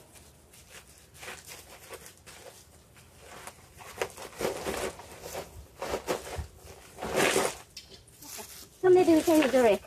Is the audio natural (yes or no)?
yes